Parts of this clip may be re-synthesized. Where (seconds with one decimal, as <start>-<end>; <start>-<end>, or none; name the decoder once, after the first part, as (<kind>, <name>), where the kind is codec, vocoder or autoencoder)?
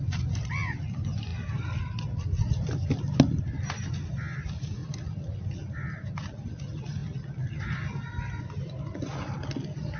none